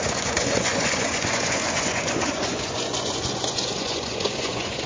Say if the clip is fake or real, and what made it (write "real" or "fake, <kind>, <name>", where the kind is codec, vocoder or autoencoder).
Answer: fake, vocoder, Vocos